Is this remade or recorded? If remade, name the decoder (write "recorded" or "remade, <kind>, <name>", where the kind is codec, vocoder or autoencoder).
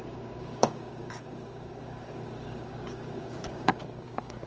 remade, codec, DAC